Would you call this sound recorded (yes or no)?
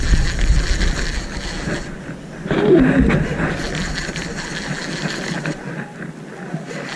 yes